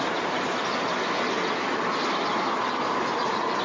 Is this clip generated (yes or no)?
no